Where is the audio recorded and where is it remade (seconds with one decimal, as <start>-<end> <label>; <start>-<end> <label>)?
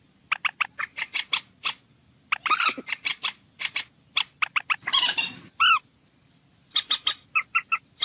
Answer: 0.0-8.0 recorded